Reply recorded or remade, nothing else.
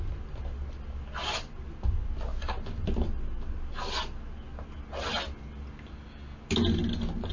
recorded